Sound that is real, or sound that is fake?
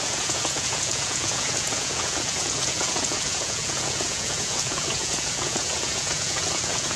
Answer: fake